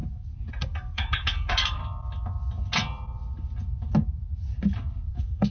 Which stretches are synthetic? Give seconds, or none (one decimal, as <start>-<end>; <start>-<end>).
0.5-1.8; 5.1-5.5